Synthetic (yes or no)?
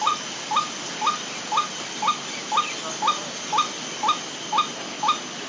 no